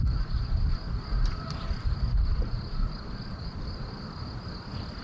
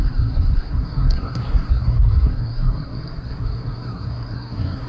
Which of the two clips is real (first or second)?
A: first